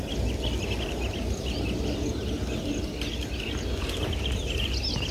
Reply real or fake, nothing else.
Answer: real